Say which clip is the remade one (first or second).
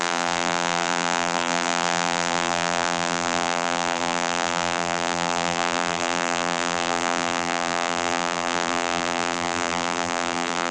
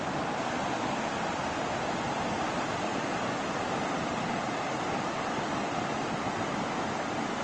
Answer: first